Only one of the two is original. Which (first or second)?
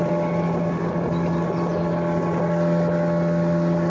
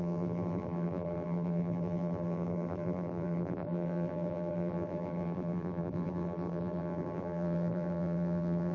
first